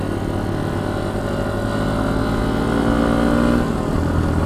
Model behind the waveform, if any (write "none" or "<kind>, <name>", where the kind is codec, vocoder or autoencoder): none